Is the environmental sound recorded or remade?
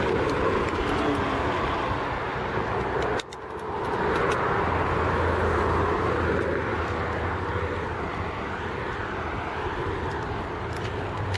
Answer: recorded